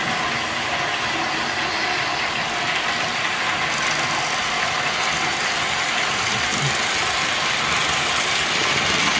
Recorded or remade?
recorded